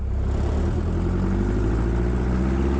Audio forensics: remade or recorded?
recorded